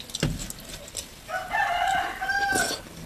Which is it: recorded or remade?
recorded